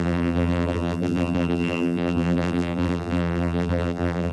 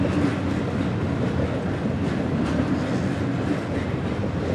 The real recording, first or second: second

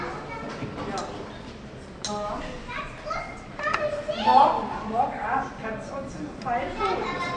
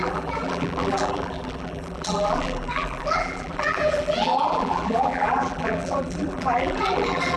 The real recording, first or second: first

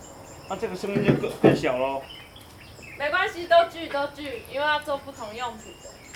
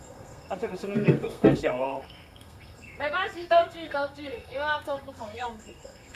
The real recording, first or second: first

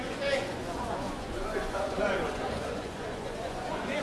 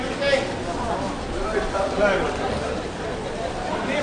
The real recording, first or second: second